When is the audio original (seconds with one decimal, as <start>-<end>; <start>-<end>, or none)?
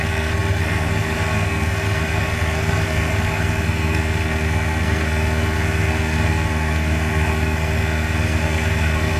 none